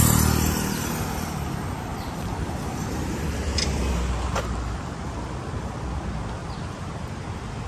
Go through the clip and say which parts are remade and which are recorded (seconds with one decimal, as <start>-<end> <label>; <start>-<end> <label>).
0.0-1.9 recorded; 1.9-3.8 remade; 3.8-6.4 recorded; 6.4-7.7 remade

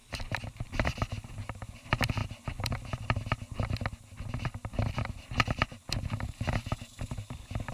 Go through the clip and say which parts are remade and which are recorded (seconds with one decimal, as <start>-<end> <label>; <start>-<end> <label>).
0.0-1.4 remade; 1.4-2.2 recorded; 2.2-2.8 remade; 2.8-4.6 recorded; 4.6-5.4 remade; 5.4-7.7 recorded